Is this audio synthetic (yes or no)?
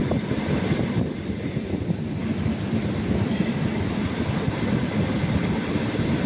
yes